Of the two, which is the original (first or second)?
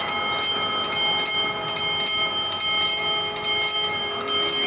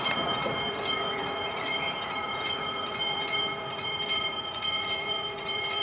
first